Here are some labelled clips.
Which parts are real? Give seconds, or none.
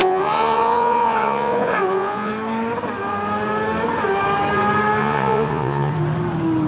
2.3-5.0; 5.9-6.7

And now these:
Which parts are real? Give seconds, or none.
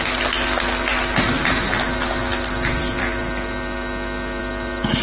0.0-5.0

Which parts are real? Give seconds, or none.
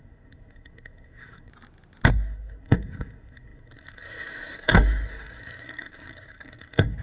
1.5-2.1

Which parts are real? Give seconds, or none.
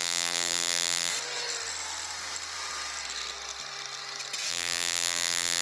1.1-4.5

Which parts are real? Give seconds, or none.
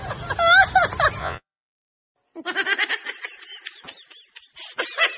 0.0-1.2; 1.9-5.2